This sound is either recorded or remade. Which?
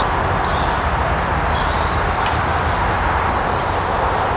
recorded